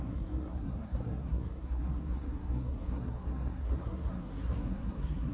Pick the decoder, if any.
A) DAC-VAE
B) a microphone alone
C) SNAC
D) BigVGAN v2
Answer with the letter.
C